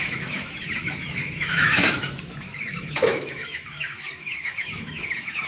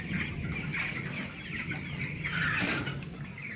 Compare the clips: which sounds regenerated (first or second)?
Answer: first